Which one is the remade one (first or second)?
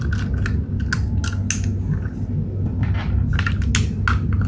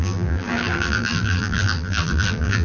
second